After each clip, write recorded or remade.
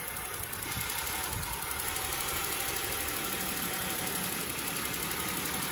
remade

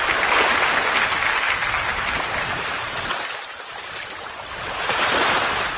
recorded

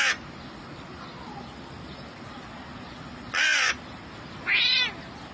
recorded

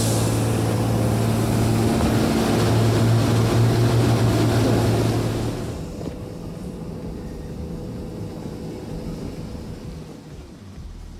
recorded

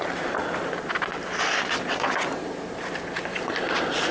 recorded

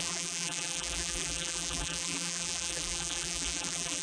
remade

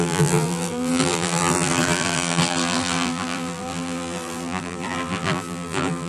remade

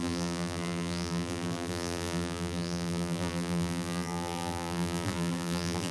remade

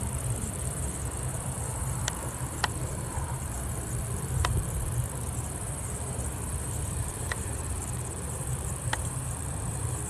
remade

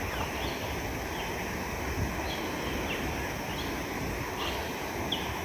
recorded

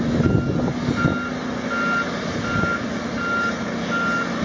recorded